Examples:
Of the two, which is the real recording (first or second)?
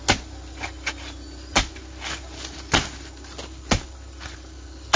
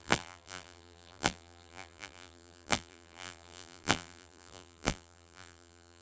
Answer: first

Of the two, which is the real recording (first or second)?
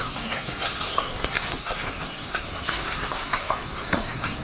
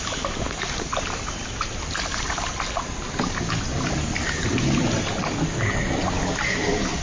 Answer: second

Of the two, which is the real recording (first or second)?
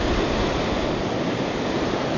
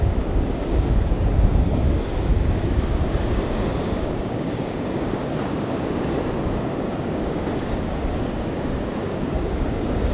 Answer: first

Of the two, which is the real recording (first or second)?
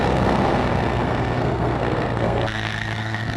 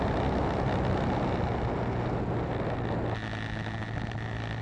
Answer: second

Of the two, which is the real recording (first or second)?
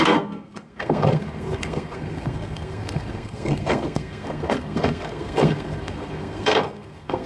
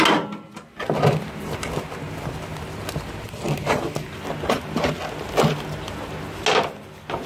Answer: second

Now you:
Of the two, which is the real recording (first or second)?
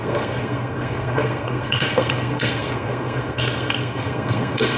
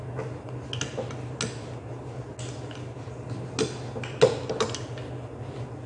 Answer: second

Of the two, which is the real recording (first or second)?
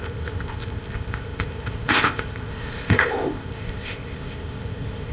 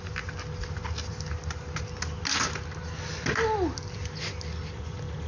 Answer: second